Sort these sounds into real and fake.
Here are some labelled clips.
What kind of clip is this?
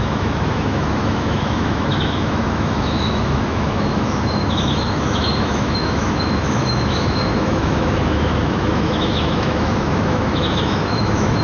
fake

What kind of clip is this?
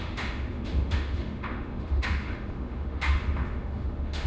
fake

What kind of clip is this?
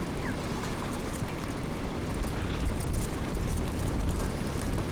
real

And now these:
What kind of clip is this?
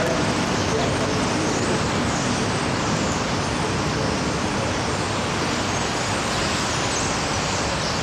real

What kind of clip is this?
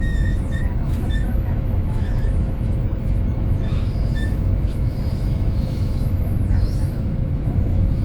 fake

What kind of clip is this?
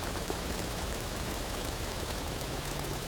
fake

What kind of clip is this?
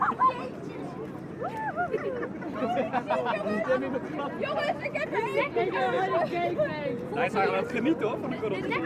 real